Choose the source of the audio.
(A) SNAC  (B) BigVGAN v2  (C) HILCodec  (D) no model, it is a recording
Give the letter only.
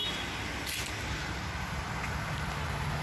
D